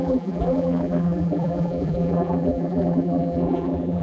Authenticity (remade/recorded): remade